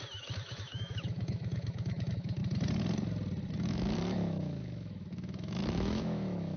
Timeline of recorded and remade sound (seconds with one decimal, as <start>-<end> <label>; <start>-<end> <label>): 0.0-2.4 remade; 2.4-3.5 recorded; 3.5-6.6 remade